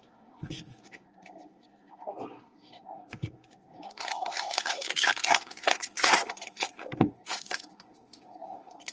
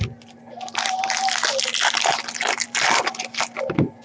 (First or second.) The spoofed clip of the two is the first